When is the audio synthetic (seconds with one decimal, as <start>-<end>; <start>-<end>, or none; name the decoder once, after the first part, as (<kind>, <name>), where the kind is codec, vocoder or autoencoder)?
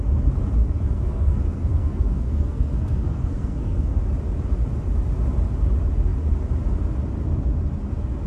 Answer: 0.6-4.0 (codec, SNAC)